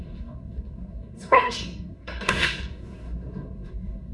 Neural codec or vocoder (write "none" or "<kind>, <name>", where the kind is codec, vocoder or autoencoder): codec, SNAC